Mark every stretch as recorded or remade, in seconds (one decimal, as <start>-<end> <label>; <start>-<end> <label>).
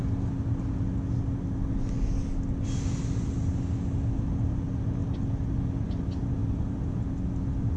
0.0-6.4 recorded; 6.4-7.1 remade; 7.1-7.8 recorded